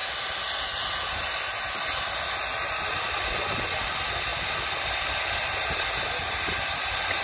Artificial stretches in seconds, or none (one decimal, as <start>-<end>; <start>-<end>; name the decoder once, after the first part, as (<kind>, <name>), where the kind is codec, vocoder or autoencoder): none